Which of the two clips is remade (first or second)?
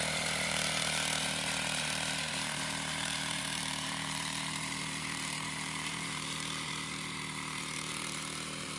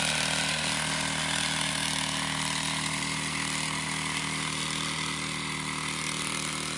first